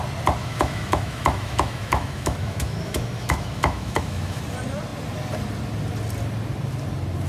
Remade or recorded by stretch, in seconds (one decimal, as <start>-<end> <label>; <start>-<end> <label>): 0.0-0.4 recorded; 0.4-4.4 remade; 4.4-7.3 recorded

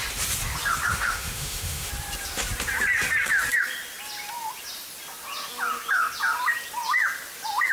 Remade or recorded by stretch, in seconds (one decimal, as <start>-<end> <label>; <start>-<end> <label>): 0.0-0.9 recorded; 0.9-1.9 remade; 1.9-7.7 recorded

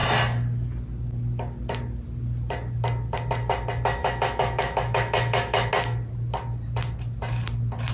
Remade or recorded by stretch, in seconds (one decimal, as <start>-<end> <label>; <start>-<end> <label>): 0.0-4.0 recorded; 4.0-5.7 remade; 5.7-7.9 recorded

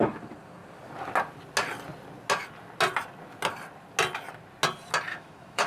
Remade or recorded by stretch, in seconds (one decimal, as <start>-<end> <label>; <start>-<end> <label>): 0.0-5.1 recorded; 5.1-5.7 remade